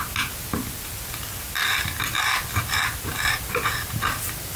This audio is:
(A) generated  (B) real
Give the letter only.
B